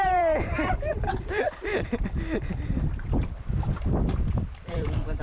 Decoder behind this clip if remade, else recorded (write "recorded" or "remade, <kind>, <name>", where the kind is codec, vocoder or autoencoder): remade, vocoder, BigVGAN v2